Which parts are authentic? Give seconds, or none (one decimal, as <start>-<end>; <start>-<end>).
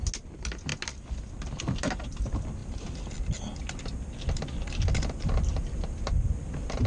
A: 0.0-6.9